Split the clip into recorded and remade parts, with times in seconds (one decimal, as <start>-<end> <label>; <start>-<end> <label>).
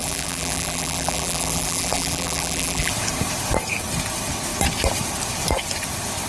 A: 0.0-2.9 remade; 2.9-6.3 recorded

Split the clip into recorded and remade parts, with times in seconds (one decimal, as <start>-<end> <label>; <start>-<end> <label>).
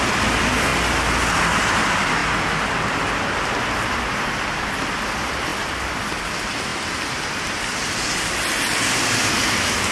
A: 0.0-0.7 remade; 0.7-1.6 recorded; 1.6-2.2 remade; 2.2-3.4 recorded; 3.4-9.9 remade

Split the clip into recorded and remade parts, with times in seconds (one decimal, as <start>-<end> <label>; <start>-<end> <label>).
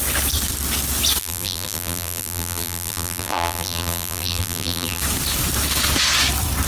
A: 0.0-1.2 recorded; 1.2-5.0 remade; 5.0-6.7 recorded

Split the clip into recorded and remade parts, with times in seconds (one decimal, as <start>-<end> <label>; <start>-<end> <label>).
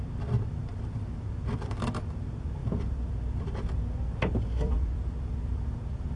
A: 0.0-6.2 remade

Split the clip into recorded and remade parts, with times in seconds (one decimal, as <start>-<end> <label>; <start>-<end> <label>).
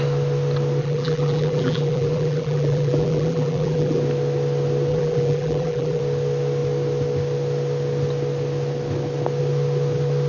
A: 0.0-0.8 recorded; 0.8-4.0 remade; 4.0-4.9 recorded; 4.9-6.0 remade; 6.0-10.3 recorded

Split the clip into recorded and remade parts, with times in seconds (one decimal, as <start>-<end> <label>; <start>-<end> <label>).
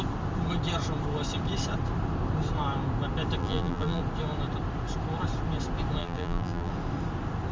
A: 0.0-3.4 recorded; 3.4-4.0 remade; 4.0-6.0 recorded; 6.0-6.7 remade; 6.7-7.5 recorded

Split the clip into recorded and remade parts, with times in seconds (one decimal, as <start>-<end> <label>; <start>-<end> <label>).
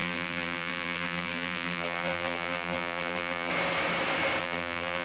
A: 0.0-3.5 remade; 3.5-4.4 recorded; 4.4-5.0 remade